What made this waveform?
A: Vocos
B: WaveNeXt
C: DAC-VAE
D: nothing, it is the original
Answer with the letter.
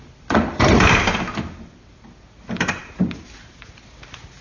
D